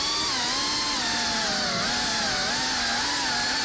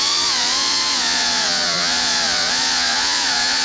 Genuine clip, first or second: first